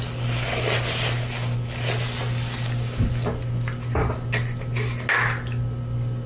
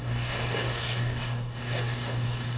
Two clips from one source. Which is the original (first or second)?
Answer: first